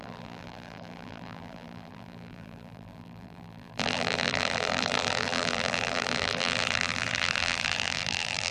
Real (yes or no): no